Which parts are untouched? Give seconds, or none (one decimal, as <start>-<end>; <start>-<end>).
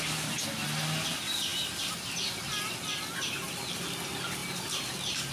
0.0-5.3